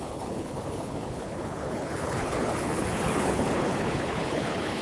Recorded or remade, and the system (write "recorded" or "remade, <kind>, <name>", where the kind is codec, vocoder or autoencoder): remade, codec, HILCodec